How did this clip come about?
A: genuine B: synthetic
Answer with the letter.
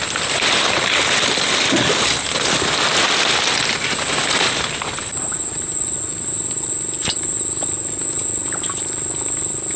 A